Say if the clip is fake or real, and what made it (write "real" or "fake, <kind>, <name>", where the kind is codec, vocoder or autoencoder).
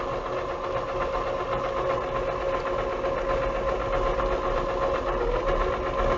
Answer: real